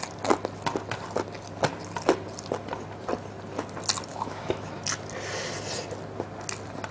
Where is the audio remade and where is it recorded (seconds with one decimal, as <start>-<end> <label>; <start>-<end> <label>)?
0.0-4.1 recorded; 4.1-4.7 remade; 4.7-6.9 recorded